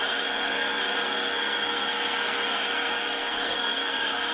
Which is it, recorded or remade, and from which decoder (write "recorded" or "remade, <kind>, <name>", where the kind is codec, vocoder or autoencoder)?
remade, codec, SNAC